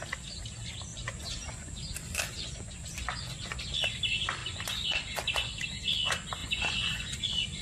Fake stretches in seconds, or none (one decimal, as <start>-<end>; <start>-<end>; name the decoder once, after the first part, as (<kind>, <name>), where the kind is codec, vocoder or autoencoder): 0.9-3.6 (vocoder, Vocos); 4.4-5.5; 6.4-7.6